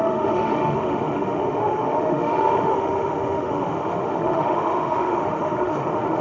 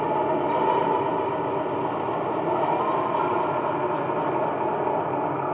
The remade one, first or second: first